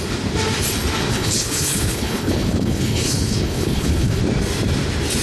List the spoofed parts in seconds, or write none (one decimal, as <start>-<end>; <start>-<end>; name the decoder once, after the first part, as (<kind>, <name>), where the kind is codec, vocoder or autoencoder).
1.1-4.2 (codec, HILCodec)